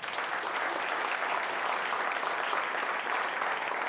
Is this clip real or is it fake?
real